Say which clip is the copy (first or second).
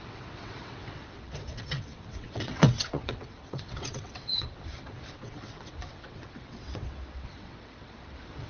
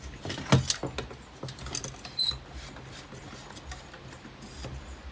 first